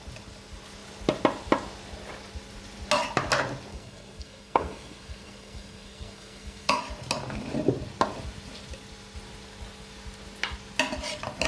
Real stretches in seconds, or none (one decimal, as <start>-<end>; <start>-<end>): 0.0-3.7; 6.8-11.5